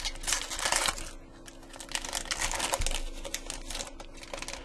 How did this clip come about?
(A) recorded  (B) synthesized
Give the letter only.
A